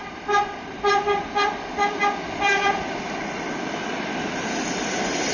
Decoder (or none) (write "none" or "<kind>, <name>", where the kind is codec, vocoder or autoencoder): vocoder, BigVGAN v2